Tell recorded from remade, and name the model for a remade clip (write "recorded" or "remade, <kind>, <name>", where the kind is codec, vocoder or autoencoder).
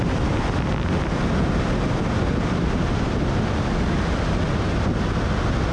recorded